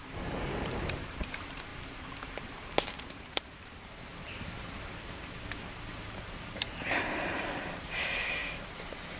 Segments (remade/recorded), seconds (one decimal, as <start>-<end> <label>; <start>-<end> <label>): 0.0-1.7 remade; 1.7-2.3 recorded; 2.3-4.1 remade; 4.1-5.9 recorded; 5.9-8.4 remade; 8.4-9.2 recorded

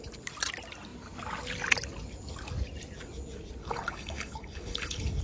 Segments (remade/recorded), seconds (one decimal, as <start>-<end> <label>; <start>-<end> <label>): 0.0-3.6 recorded; 3.6-5.2 remade